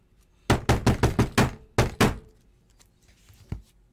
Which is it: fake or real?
real